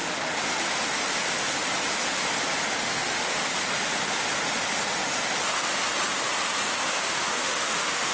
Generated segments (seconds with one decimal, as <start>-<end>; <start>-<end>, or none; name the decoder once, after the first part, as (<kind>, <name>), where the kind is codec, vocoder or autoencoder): 2.8-3.5 (autoencoder, DAC-VAE); 6.8-8.1

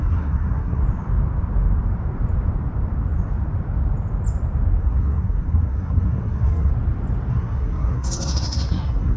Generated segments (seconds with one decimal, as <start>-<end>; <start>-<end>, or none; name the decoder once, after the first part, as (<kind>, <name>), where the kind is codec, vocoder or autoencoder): 0.0-0.8 (codec, SNAC); 4.8-6.7; 7.3-9.2

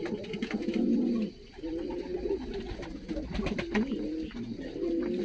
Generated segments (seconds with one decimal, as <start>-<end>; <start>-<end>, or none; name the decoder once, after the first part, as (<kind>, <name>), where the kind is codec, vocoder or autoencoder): none

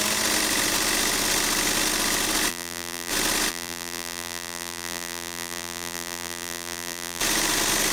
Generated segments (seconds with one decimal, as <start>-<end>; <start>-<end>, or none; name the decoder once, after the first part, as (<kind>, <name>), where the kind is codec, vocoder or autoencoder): 2.5-3.1 (vocoder, BigVGAN v2); 3.5-7.2

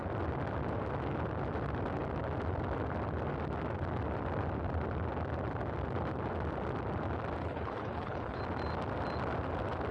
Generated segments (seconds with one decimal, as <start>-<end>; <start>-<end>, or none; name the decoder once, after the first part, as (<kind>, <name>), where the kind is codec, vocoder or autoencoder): 7.4-8.4 (codec, HILCodec)

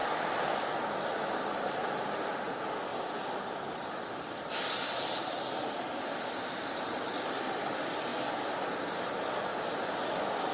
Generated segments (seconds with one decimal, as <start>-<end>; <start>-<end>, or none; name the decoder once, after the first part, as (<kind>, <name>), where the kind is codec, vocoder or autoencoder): 2.9-5.2 (vocoder, BigVGAN v2)

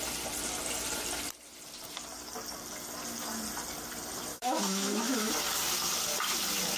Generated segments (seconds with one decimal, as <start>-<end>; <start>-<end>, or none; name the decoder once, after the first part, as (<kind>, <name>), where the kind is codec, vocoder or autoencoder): 4.3-5.3 (autoencoder, DAC-VAE)

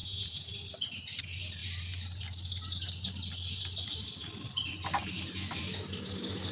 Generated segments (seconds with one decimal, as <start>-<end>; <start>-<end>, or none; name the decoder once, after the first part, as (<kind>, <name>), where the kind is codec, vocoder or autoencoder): 0.0-0.5 (vocoder, Vocos)